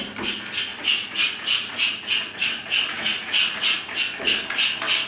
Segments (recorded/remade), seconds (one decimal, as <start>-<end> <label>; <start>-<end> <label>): 0.0-0.7 recorded; 0.7-3.8 remade; 3.8-5.1 recorded